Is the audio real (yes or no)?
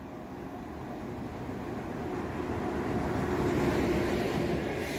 yes